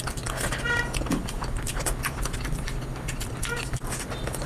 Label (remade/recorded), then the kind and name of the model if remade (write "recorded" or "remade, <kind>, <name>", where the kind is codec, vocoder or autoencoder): recorded